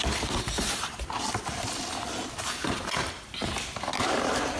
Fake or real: real